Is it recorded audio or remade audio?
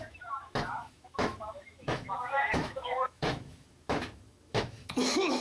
remade